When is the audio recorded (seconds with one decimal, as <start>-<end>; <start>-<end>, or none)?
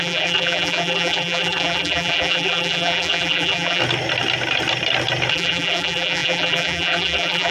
3.8-5.3